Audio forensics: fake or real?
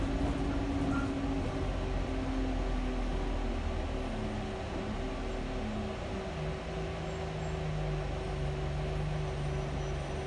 real